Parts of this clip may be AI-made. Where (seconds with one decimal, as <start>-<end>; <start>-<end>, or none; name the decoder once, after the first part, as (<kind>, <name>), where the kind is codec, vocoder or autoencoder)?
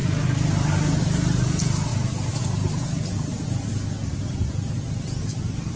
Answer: none